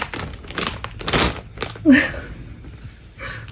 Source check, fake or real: real